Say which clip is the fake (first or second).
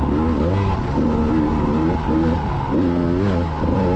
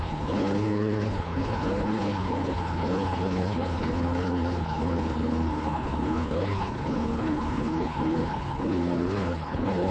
second